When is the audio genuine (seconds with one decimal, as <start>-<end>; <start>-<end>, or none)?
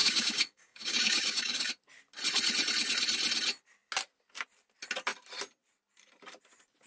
1.7-6.9